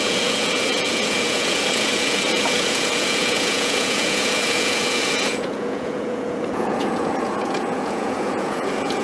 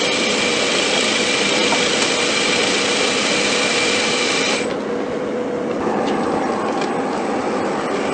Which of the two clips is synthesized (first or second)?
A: first